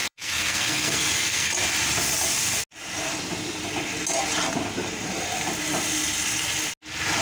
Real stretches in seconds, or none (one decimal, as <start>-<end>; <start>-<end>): 1.5-7.2